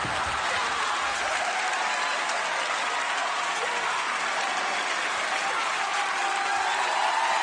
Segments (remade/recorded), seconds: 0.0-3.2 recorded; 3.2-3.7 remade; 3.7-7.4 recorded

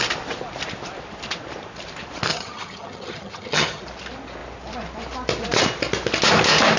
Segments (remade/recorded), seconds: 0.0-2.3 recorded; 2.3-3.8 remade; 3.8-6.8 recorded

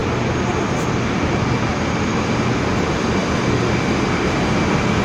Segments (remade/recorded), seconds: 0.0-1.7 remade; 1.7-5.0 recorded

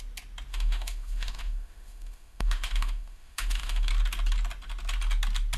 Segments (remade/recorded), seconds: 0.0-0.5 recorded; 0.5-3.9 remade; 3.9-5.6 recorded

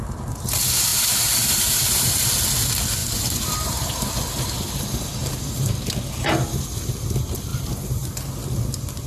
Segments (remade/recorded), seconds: 0.0-0.9 recorded; 0.9-2.3 remade; 2.3-3.0 recorded; 3.0-4.1 remade; 4.1-5.2 recorded; 5.2-5.7 remade; 5.7-7.5 recorded; 7.5-8.1 remade; 8.1-9.1 recorded

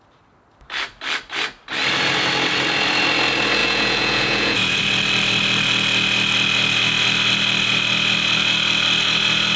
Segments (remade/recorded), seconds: 0.0-3.6 recorded; 3.6-4.8 remade; 4.8-9.6 recorded